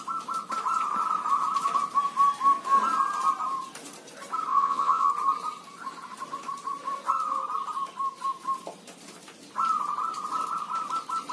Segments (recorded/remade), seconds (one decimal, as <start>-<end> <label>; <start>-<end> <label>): 0.0-4.5 recorded; 4.5-5.1 remade; 5.1-11.3 recorded